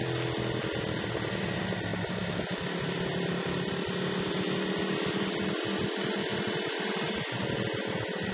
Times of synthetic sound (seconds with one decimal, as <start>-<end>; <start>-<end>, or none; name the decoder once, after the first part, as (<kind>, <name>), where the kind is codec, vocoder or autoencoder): 6.3-7.1 (vocoder, BigVGAN v2)